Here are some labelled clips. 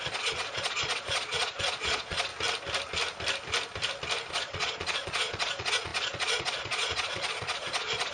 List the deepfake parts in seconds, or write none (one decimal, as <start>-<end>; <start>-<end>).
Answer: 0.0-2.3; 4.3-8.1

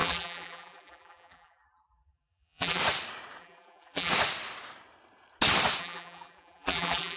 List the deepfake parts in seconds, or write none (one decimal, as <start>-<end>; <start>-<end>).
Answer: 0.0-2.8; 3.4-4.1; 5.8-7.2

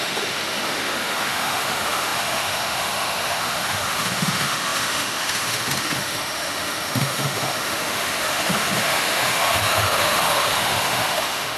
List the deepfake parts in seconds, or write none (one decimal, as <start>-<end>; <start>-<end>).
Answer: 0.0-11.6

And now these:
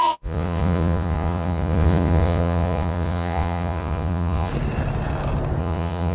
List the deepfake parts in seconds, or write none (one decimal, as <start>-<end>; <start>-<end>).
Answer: 0.0-4.5; 5.6-6.1

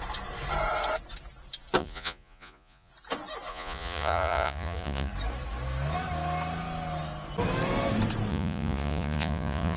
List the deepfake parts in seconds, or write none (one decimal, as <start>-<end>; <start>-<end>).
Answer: 1.8-2.9; 3.5-5.1; 8.3-9.8

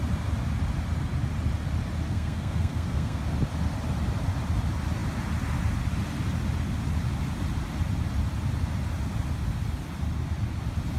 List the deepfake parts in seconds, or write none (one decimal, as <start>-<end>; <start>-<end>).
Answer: 2.1-3.2